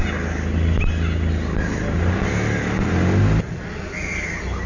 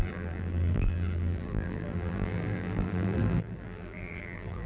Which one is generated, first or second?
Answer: second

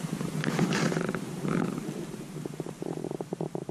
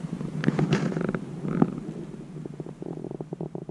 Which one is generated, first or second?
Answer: first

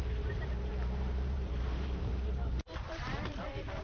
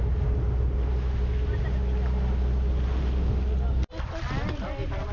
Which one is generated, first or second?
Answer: first